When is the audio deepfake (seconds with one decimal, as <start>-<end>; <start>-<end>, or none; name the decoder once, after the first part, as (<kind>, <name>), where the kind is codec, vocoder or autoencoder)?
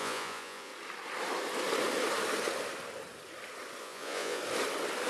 0.0-0.7 (vocoder, Vocos); 3.8-4.4